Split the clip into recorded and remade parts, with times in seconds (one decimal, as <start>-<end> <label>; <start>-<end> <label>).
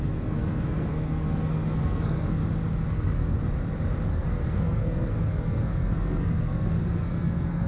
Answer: 0.0-2.4 remade; 2.4-2.9 recorded; 2.9-3.4 remade; 3.4-4.1 recorded; 4.1-7.7 remade